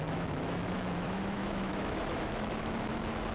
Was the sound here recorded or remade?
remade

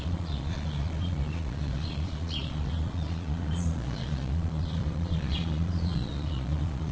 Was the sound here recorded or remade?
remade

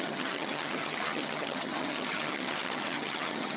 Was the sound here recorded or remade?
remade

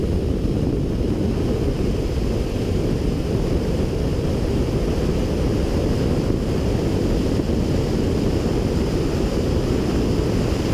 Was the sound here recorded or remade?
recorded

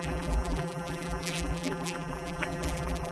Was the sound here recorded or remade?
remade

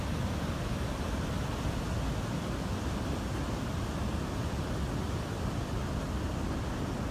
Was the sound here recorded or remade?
recorded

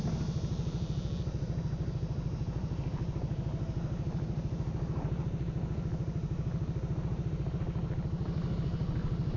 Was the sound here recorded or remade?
recorded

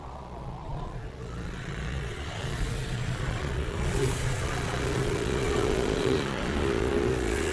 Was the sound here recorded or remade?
remade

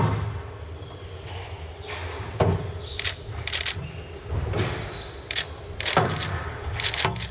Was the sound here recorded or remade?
recorded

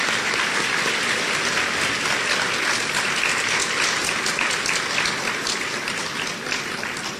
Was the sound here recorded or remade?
recorded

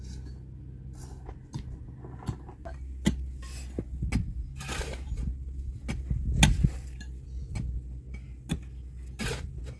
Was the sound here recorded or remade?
recorded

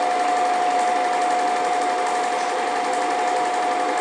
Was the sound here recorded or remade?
recorded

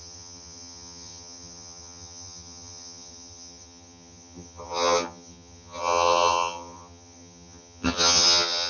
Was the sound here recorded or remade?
remade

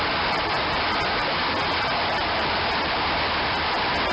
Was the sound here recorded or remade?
recorded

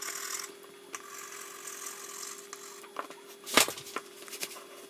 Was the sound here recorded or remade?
recorded